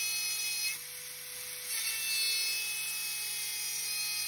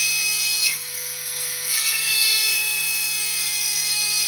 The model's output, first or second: second